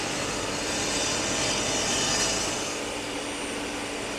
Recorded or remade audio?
recorded